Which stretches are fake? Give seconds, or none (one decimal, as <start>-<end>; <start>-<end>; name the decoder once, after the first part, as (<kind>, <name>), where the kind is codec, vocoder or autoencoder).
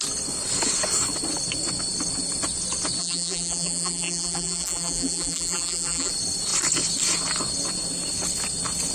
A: 3.0-6.1 (vocoder, BigVGAN v2)